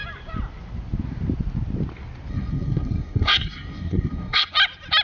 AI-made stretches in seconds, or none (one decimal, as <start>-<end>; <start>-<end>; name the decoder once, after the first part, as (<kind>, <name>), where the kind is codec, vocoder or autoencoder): 2.3-4.5 (codec, SNAC)